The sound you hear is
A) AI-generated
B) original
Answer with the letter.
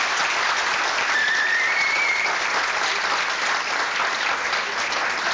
B